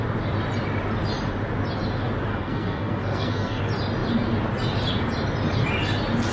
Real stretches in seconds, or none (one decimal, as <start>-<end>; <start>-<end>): 0.0-2.3; 3.6-6.3

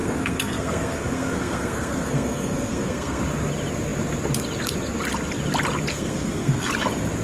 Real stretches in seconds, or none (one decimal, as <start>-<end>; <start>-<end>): 3.2-5.9; 6.7-7.2

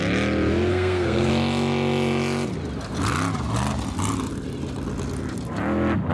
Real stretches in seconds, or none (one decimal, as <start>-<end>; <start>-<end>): 0.0-0.7; 1.3-6.1

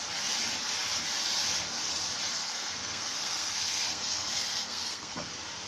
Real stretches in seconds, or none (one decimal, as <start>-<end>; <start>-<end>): 0.0-2.3; 5.3-5.7